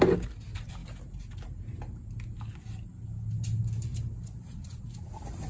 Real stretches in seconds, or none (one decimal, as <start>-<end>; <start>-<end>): 0.0-3.9; 4.8-5.5